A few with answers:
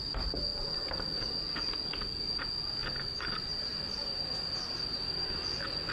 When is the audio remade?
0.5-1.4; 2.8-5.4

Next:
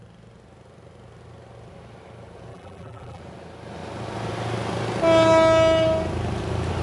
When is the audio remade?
2.5-3.2

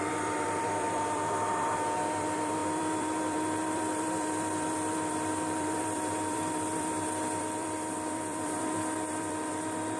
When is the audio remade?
0.0-10.0

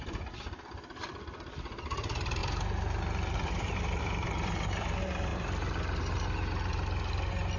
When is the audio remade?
5.3-6.0

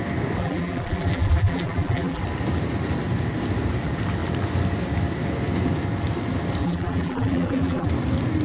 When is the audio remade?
0.4-2.2; 6.6-7.9

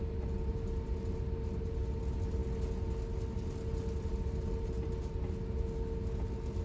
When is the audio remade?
none